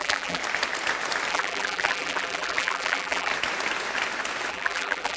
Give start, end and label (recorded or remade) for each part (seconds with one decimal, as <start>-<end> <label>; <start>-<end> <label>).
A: 0.0-0.4 remade; 0.4-1.3 recorded; 1.3-3.3 remade; 3.3-4.5 recorded; 4.5-5.2 remade